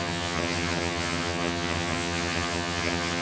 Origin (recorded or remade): remade